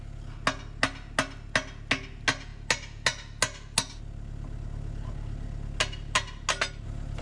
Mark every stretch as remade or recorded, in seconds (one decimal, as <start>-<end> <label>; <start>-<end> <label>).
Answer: 0.0-7.2 recorded